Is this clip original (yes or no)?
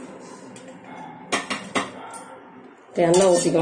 yes